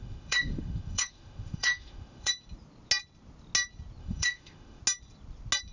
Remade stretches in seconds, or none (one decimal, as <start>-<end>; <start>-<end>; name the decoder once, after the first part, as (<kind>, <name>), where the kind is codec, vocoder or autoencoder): 0.0-2.3 (autoencoder, DAC-VAE); 4.0-4.8